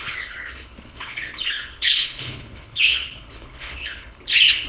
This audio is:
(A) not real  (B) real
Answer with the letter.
A